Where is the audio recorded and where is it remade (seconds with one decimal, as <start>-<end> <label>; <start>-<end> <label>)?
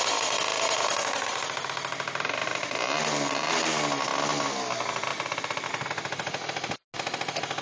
0.0-2.4 recorded; 2.4-3.5 remade; 3.5-5.1 recorded; 5.1-5.7 remade; 5.7-7.6 recorded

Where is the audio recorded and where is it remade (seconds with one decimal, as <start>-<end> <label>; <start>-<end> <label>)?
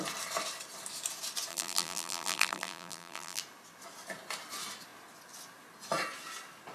0.0-1.5 recorded; 1.5-3.4 remade; 3.4-6.7 recorded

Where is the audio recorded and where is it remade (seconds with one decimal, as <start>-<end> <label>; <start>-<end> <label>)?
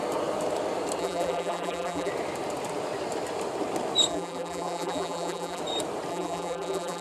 0.0-1.0 recorded; 1.0-2.1 remade; 2.1-4.1 recorded; 4.1-5.6 remade; 5.6-6.1 recorded; 6.1-7.0 remade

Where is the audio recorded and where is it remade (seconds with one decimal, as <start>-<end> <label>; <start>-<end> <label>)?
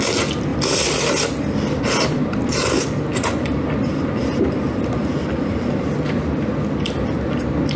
0.0-0.5 recorded; 0.5-1.8 remade; 1.8-7.8 recorded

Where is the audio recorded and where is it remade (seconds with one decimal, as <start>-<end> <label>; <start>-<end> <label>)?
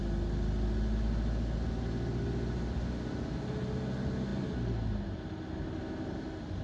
0.0-6.6 recorded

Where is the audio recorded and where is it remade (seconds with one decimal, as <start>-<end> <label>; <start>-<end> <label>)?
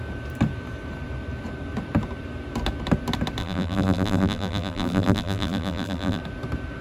0.0-3.4 recorded; 3.4-6.2 remade; 6.2-6.8 recorded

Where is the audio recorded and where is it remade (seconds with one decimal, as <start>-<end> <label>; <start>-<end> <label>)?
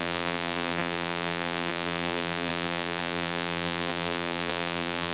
0.0-5.1 remade